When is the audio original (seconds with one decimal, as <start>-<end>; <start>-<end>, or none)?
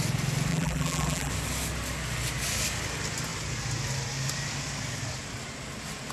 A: 0.0-0.5; 1.3-6.1